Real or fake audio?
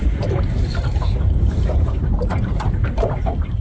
fake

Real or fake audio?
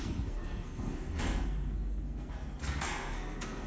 fake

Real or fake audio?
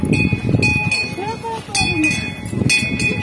real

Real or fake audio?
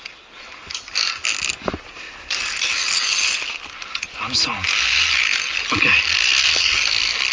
real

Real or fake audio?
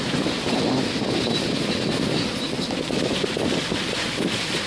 real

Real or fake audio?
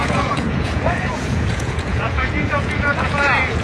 fake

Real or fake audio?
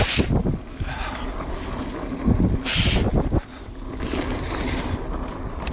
real